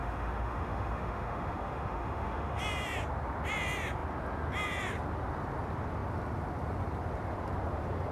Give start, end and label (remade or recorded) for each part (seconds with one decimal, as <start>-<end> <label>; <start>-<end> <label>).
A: 0.0-2.6 remade; 2.6-8.1 recorded